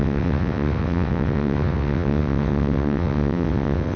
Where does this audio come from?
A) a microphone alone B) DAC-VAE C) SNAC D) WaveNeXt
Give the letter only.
D